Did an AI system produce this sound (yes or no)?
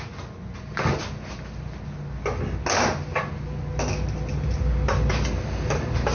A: no